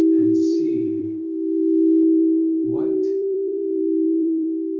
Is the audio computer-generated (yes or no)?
yes